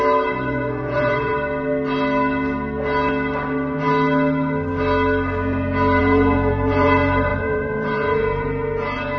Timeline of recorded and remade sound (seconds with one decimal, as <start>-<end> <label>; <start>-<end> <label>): 0.0-1.3 remade; 1.3-6.0 recorded; 6.0-9.2 remade